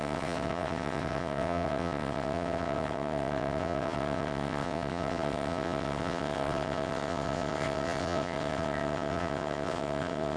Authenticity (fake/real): fake